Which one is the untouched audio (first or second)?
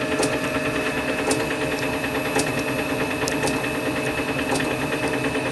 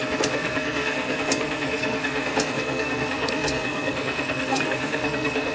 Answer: first